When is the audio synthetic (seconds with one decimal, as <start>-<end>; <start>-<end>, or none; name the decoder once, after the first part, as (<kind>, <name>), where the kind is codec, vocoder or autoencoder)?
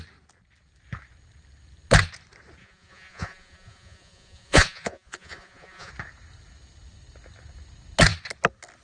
2.6-5.9 (vocoder, Vocos)